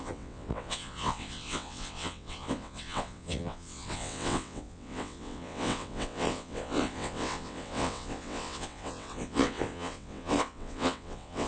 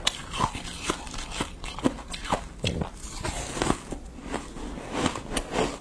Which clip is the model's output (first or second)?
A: first